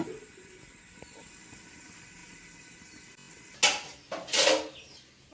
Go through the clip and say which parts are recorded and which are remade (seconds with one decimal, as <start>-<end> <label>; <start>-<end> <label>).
0.0-5.3 recorded